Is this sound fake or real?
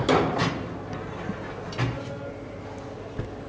real